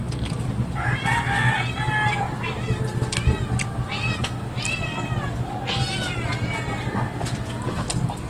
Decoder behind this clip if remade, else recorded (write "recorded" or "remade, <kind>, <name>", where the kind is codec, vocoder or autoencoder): recorded